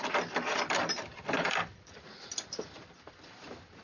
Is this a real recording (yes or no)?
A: no